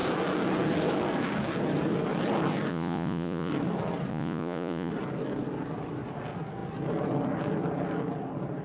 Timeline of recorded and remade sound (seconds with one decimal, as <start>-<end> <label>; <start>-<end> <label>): 0.0-2.7 recorded; 2.7-3.5 remade; 3.5-4.1 recorded; 4.1-4.9 remade; 4.9-8.6 recorded